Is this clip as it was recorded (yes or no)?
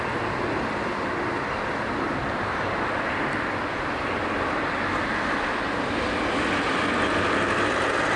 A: yes